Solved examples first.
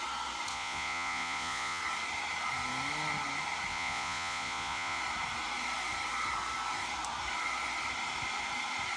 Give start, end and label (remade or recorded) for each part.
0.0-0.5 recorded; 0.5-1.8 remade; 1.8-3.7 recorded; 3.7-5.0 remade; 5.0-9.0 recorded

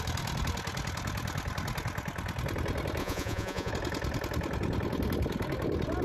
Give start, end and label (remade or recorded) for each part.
0.0-3.0 recorded; 3.0-3.7 remade; 3.7-6.0 recorded

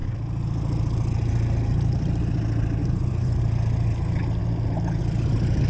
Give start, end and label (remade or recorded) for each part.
0.0-2.8 recorded; 2.8-3.4 remade; 3.4-5.7 recorded

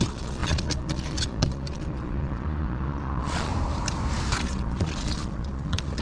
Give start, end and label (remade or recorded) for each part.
0.0-3.5 remade; 3.5-4.4 recorded; 4.4-6.0 remade